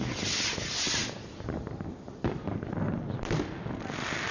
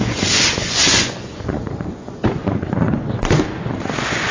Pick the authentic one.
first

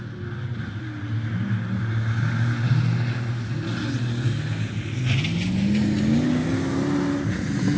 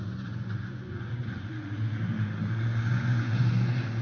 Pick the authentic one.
first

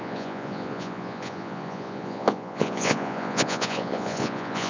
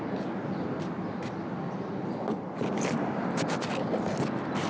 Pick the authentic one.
second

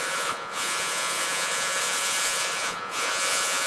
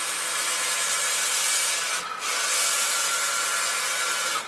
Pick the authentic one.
second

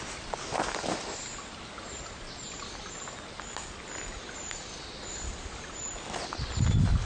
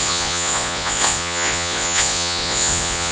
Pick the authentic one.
first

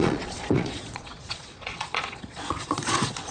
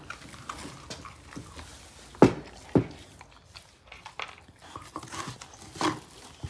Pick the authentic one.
second